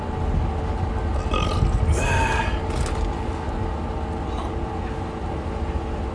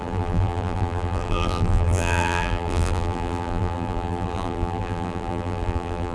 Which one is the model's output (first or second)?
second